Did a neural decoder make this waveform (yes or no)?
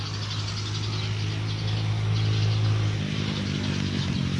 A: no